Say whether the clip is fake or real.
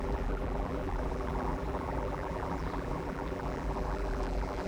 fake